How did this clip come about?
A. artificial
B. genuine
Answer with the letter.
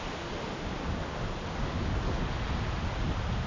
B